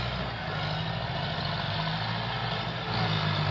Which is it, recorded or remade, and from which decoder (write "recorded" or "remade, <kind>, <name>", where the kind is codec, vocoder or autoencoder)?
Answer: recorded